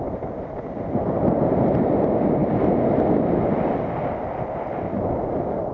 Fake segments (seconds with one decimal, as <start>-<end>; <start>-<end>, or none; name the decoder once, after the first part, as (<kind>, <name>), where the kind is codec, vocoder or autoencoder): none